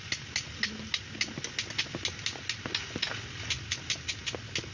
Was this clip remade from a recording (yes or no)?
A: no